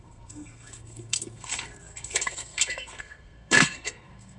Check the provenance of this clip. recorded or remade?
remade